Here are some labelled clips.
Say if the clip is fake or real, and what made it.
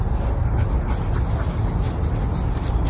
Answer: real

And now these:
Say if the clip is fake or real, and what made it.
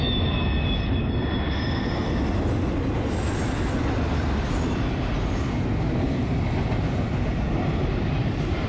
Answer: real